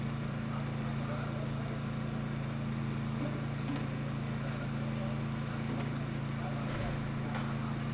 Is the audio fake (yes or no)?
no